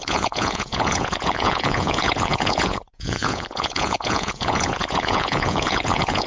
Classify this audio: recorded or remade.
remade